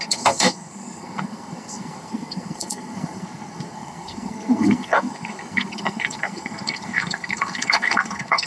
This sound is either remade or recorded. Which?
remade